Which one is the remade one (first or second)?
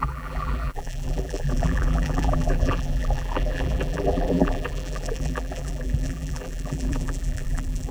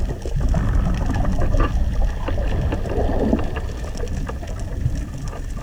first